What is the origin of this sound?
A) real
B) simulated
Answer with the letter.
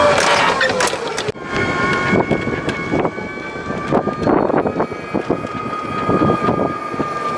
A